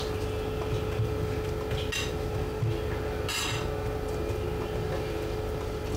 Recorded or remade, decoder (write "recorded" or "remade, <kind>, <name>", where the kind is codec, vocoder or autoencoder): recorded